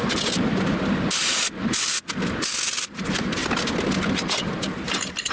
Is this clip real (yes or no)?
yes